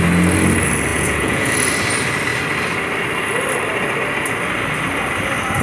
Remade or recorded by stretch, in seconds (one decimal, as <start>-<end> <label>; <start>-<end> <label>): 0.0-0.9 recorded; 0.9-1.5 remade; 1.5-5.6 recorded